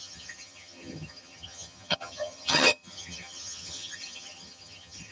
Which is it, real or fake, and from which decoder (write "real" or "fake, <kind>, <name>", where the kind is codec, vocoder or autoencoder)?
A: fake, vocoder, HiFi-GAN